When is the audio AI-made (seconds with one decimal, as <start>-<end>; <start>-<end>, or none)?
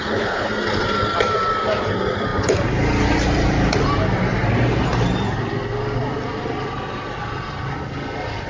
0.0-0.5